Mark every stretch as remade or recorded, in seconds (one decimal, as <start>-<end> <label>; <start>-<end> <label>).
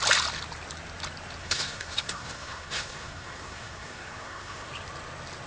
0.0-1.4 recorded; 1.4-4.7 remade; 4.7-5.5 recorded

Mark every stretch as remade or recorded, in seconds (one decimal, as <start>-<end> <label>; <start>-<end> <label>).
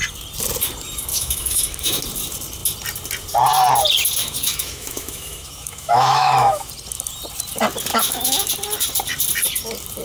0.0-1.1 recorded; 1.1-2.0 remade; 2.0-4.2 recorded; 4.2-6.7 remade; 6.7-7.9 recorded; 7.9-8.5 remade; 8.5-10.0 recorded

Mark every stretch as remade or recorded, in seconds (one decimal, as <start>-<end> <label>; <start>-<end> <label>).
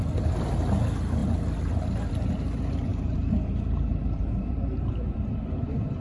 0.0-2.9 recorded; 2.9-5.2 remade; 5.2-6.0 recorded